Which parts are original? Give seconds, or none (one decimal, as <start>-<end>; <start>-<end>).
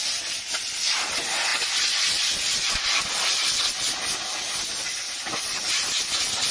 0.0-6.5